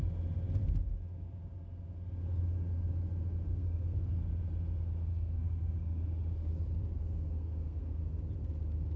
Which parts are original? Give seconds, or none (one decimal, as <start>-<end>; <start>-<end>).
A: 0.0-3.5; 4.2-5.1; 6.0-7.0; 8.0-9.0